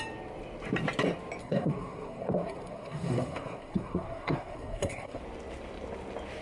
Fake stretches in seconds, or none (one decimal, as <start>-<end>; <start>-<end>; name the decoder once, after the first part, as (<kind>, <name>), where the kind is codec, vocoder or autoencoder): 1.4-5.2 (codec, SNAC)